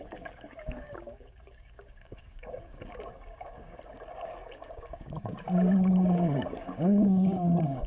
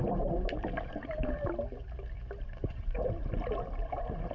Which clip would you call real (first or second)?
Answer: second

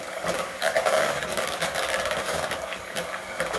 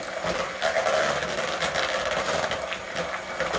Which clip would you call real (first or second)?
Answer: second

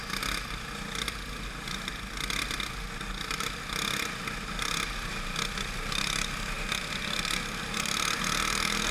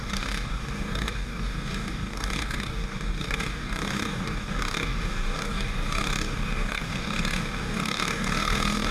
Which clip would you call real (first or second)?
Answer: first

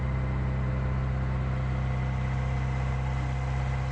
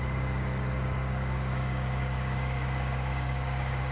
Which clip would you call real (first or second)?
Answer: first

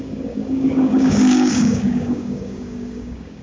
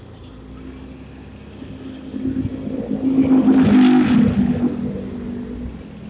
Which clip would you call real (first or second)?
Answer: second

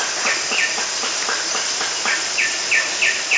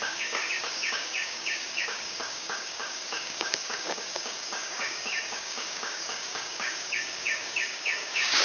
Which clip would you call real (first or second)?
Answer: first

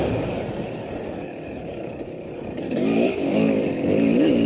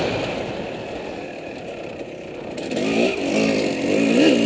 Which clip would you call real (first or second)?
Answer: second